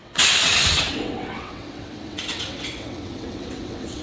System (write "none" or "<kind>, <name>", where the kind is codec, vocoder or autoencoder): vocoder, WaveNeXt